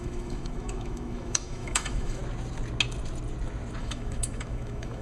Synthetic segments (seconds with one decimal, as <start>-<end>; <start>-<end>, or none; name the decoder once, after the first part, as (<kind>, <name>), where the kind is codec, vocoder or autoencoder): 0.0-2.2 (autoencoder, DAC-VAE); 3.8-5.0